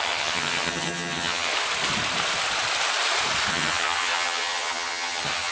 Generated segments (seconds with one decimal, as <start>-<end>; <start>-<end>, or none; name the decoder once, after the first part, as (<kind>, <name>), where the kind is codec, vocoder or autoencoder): 0.0-1.5 (vocoder, HiFi-GAN); 3.5-5.5